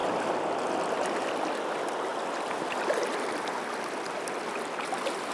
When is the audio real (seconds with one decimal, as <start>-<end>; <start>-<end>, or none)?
0.0-5.3